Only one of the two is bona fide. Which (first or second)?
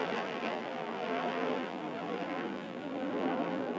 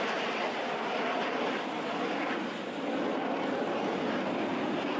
second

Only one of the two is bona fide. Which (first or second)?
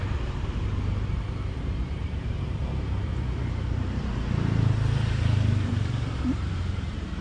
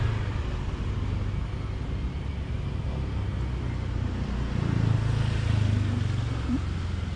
second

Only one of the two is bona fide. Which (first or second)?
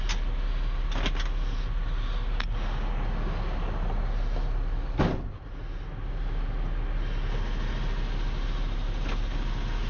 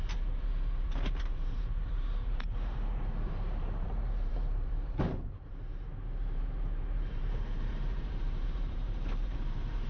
first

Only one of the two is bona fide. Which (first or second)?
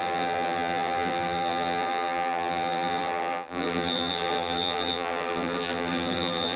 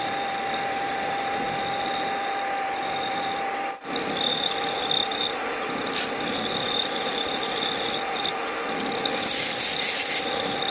second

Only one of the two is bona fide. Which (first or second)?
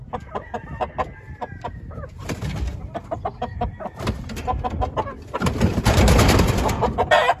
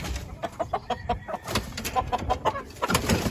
first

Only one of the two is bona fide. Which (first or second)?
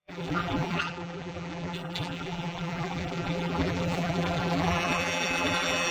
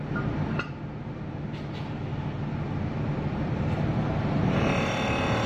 second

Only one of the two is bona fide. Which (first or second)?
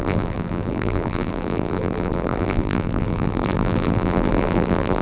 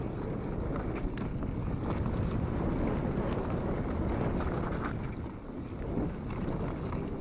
second